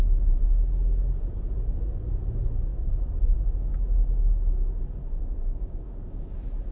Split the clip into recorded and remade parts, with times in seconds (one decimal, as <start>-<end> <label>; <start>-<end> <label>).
0.0-5.0 recorded; 5.0-6.3 remade; 6.3-6.7 recorded